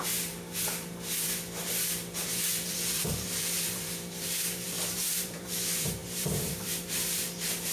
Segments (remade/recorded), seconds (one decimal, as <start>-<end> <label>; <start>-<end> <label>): 0.0-7.7 remade